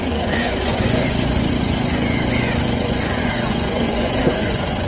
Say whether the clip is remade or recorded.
remade